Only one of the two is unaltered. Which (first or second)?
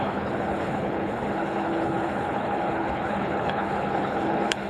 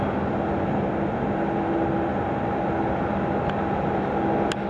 second